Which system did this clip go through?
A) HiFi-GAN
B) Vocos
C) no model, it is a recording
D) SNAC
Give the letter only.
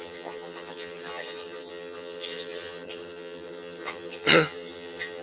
A